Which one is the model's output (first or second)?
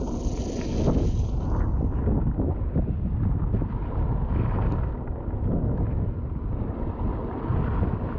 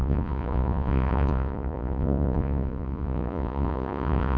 second